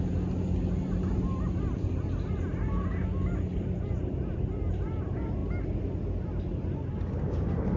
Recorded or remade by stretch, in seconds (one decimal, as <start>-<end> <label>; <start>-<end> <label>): 0.0-7.8 recorded